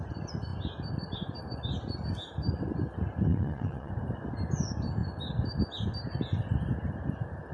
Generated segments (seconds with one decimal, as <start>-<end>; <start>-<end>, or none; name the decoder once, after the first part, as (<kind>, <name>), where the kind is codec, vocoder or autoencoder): 3.3-3.9 (vocoder, Vocos)

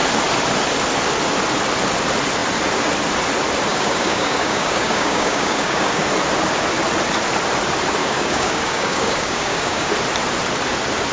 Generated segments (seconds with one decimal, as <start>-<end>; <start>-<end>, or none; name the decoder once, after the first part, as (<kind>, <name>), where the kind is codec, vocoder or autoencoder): 3.7-6.0 (codec, DAC); 8.0-9.9

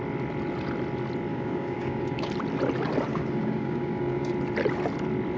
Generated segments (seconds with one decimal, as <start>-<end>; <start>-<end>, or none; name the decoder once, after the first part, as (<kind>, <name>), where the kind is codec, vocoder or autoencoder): 1.3-2.3 (codec, DAC); 3.1-4.3

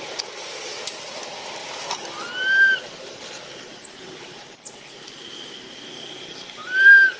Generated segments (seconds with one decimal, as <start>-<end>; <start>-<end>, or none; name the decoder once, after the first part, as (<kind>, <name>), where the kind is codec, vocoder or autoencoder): none

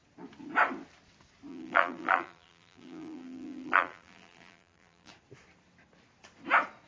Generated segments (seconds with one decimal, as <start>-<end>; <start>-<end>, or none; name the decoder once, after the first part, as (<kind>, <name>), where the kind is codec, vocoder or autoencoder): 1.5-5.1 (vocoder, BigVGAN v2)

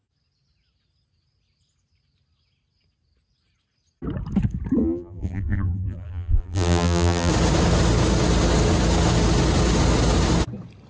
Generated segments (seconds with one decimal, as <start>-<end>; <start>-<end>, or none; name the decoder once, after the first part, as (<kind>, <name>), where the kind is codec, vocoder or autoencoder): 4.8-7.3 (vocoder, BigVGAN v2)